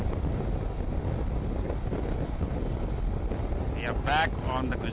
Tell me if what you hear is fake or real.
real